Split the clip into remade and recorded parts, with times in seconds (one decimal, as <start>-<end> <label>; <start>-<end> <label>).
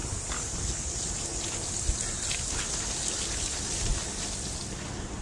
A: 0.0-5.2 recorded